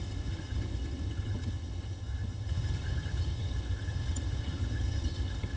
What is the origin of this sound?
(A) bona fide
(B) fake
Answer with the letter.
B